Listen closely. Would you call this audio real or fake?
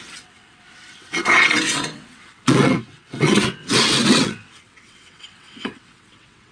fake